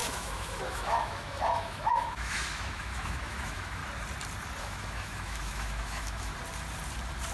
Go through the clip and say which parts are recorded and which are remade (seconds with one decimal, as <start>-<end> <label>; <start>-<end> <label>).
0.0-3.8 remade; 3.8-4.6 recorded; 4.6-6.3 remade; 6.3-7.3 recorded